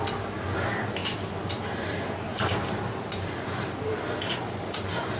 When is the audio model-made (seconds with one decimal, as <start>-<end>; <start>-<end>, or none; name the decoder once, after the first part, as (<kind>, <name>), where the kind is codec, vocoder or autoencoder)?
none